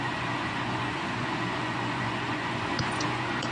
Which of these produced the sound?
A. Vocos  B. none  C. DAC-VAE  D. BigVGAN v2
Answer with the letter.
A